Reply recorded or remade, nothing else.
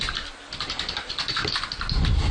recorded